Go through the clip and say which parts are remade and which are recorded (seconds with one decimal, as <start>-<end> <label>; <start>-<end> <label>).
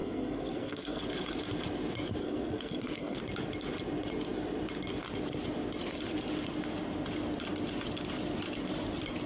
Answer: 0.0-1.0 remade; 1.0-2.2 recorded; 2.2-3.2 remade; 3.2-9.3 recorded